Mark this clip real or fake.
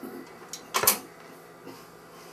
real